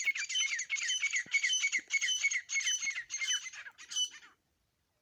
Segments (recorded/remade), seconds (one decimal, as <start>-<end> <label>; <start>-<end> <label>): 0.0-5.0 recorded